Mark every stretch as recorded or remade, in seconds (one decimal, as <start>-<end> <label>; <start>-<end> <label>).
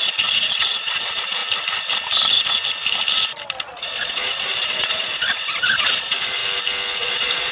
0.0-1.4 remade; 1.4-3.6 recorded; 3.6-6.4 remade; 6.4-7.1 recorded; 7.1-7.5 remade